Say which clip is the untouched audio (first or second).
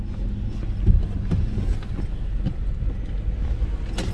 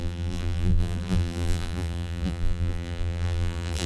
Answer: first